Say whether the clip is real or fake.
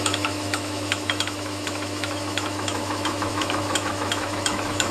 fake